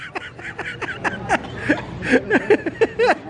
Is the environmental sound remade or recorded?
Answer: recorded